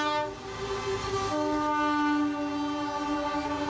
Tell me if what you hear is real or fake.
real